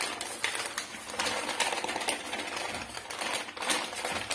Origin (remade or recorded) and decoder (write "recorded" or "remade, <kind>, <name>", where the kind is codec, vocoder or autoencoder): recorded